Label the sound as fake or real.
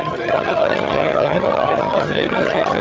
fake